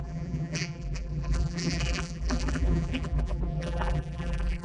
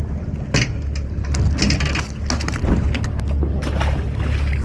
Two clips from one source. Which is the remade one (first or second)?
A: first